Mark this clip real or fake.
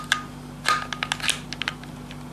real